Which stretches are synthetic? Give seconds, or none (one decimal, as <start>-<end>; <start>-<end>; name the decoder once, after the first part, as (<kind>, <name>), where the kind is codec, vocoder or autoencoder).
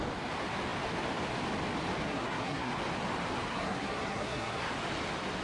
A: 2.0-2.7 (codec, SNAC); 3.5-4.7